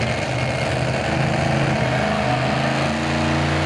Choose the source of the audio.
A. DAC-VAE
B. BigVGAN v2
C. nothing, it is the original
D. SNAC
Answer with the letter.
C